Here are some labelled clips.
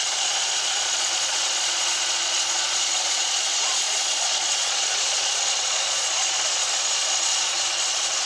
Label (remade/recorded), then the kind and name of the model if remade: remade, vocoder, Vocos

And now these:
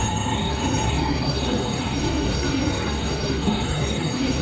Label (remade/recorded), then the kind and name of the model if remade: remade, codec, SNAC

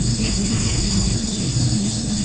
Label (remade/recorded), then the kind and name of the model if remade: remade, codec, SNAC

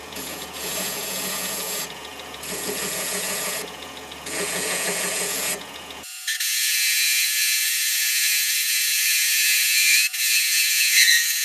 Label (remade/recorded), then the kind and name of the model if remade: remade, vocoder, Vocos